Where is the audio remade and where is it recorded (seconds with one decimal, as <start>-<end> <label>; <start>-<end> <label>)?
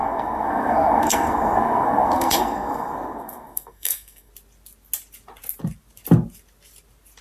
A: 0.0-4.3 remade; 4.3-7.2 recorded